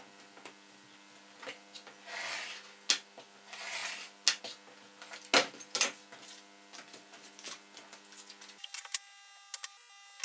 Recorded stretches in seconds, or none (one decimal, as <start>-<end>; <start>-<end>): 0.0-10.2